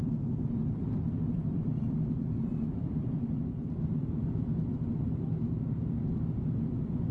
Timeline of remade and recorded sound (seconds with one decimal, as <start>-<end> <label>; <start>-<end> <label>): 0.0-7.1 remade

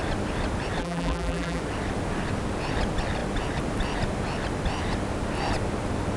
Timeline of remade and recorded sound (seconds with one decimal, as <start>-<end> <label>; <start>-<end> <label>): 0.0-0.8 recorded; 0.8-1.6 remade; 1.6-6.2 recorded

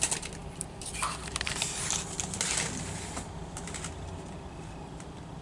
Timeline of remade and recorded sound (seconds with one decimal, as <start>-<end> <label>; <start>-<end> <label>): 0.0-5.4 remade

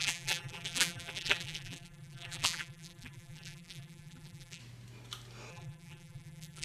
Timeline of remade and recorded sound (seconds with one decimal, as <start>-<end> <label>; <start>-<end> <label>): 0.0-4.6 remade; 4.6-5.5 recorded; 5.5-6.6 remade

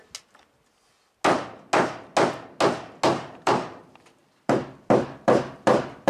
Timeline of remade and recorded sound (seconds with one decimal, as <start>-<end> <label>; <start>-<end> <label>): 0.0-3.1 recorded; 3.1-3.8 remade; 3.8-4.2 recorded; 4.2-6.1 remade

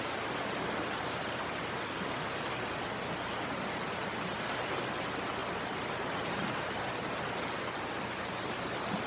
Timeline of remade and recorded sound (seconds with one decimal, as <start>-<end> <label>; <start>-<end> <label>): 0.0-9.1 recorded